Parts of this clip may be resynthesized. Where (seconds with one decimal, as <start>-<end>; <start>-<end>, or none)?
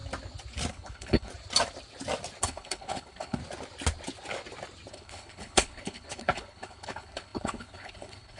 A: 0.7-1.3; 2.4-3.4; 4.9-8.4